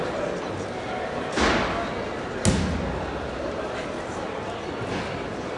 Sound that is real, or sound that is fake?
real